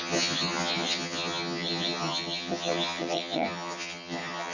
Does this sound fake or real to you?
fake